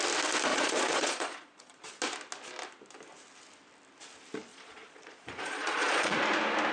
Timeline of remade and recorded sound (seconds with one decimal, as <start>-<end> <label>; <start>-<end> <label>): 0.0-0.5 recorded; 0.5-1.8 remade; 1.8-4.5 recorded; 4.5-6.2 remade; 6.2-6.7 recorded